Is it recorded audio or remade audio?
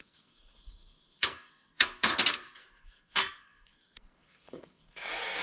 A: remade